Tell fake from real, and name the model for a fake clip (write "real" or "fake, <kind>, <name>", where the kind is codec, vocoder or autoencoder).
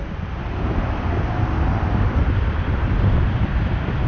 fake, vocoder, BigVGAN v2